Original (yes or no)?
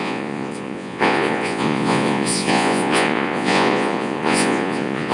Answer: no